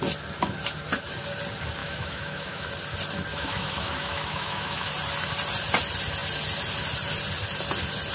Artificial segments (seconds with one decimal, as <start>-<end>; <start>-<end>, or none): 1.8-2.7; 3.3-4.9